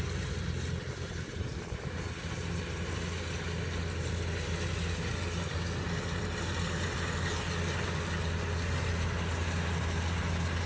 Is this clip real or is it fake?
real